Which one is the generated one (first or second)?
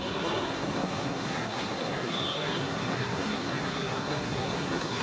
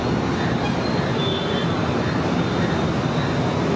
first